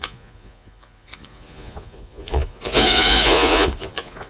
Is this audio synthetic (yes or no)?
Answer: yes